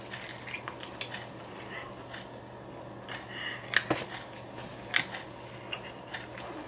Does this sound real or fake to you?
real